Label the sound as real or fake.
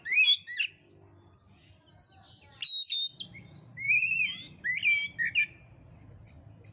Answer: real